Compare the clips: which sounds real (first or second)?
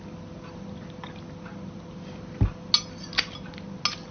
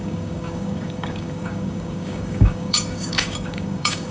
first